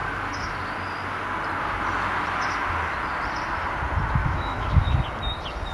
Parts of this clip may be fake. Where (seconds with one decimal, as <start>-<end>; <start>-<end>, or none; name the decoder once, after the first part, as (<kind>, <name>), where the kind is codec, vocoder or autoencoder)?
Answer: 4.2-4.9 (autoencoder, DAC-VAE)